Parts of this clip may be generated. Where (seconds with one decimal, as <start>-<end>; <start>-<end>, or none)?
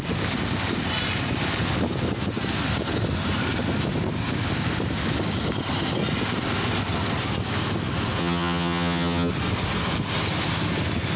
8.2-9.3